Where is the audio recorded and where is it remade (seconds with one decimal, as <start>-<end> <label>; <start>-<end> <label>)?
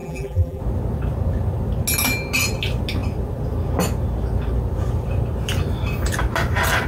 0.0-0.6 remade; 0.6-6.9 recorded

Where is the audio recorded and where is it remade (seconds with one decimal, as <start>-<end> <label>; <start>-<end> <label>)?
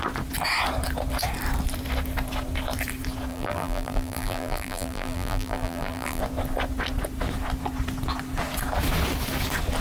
0.0-3.3 recorded; 3.3-6.2 remade; 6.2-9.8 recorded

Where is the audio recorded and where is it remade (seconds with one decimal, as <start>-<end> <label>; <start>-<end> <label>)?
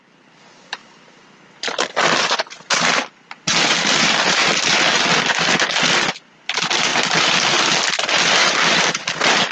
0.0-8.4 recorded; 8.4-9.0 remade; 9.0-9.5 recorded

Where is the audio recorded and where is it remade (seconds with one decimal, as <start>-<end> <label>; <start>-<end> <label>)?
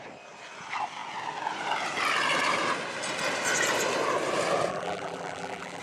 0.0-4.7 recorded; 4.7-5.8 remade